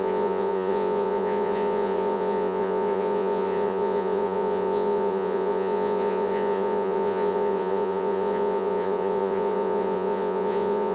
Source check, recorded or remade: remade